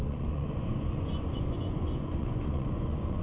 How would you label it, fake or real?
fake